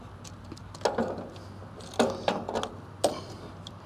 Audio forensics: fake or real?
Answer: real